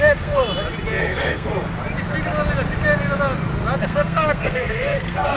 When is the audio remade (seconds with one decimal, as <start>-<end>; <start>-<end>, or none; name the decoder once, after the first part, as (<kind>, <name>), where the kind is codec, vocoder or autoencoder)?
0.0-0.4 (codec, SNAC); 1.0-1.5; 3.8-5.4